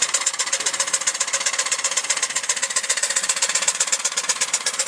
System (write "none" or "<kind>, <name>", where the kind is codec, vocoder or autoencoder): vocoder, Vocos